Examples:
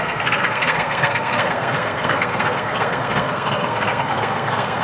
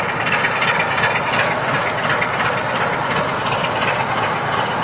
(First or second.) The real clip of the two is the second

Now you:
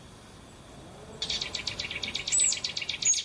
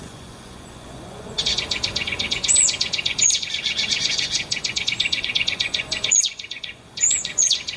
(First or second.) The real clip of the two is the first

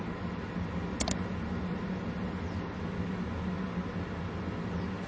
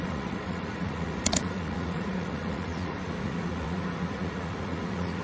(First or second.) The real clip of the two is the first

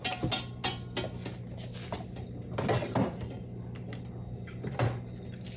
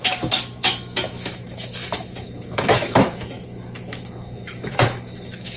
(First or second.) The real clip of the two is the first